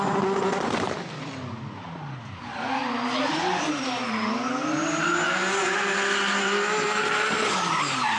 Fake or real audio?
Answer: real